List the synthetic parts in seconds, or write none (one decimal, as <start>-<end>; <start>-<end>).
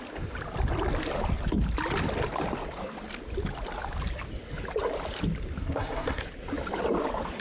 5.6-6.2